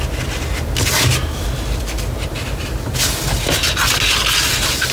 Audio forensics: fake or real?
real